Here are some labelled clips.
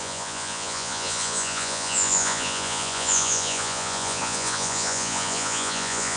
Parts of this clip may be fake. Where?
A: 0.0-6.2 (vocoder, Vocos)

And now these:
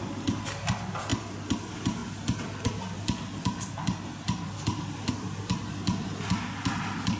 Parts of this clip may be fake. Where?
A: none

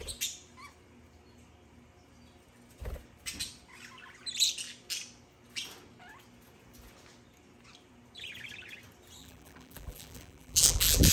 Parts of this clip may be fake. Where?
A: 9.2-11.1 (vocoder, BigVGAN v2)

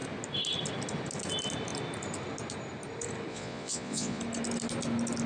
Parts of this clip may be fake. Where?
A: 3.3-4.2 (vocoder, Vocos)